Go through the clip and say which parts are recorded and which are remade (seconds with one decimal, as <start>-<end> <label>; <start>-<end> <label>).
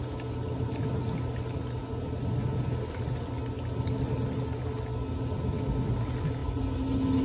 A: 0.0-7.2 recorded